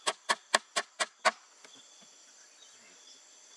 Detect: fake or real real